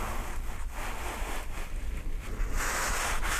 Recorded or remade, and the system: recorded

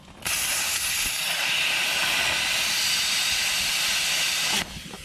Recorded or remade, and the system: recorded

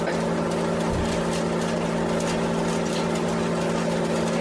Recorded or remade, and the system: recorded